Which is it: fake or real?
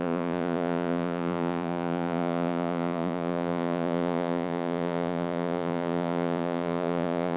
fake